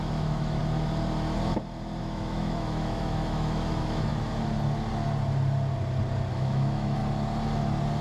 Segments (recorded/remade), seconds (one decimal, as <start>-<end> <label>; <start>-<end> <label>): 0.0-0.6 remade; 0.6-2.0 recorded; 2.0-4.1 remade; 4.1-6.3 recorded; 6.3-7.0 remade; 7.0-8.0 recorded